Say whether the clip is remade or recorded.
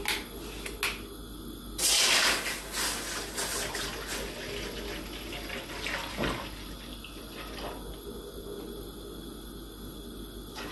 recorded